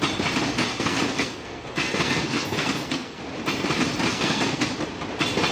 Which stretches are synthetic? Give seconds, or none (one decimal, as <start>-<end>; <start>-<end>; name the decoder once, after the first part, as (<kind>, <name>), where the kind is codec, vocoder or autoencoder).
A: 0.7-3.2 (codec, SNAC); 4.1-4.6